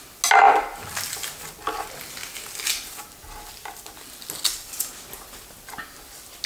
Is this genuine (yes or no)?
yes